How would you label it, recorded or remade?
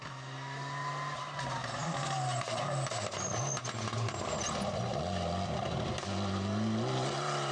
recorded